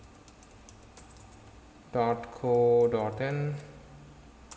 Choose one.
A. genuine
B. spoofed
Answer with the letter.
A